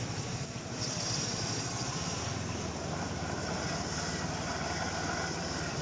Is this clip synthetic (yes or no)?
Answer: no